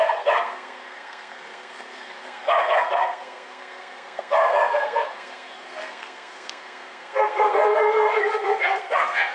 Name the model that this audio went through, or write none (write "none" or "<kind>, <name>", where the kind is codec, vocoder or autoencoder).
codec, SNAC